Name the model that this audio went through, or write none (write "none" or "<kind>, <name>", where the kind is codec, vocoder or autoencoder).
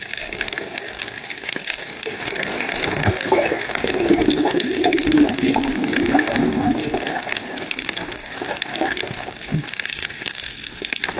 codec, DAC